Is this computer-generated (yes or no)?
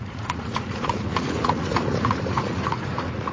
yes